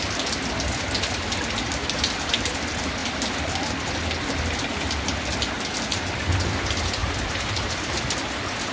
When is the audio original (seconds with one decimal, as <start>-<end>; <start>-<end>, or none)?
0.0-7.0; 8.0-8.7